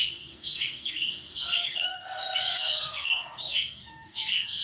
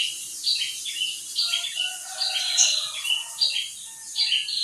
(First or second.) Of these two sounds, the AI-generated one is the first